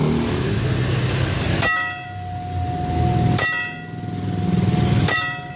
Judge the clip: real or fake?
real